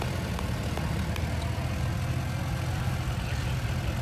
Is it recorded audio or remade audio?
recorded